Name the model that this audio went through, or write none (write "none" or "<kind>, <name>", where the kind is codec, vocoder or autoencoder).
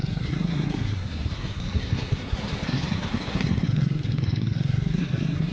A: codec, SNAC